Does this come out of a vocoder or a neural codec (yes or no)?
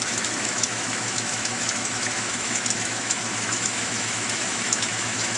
yes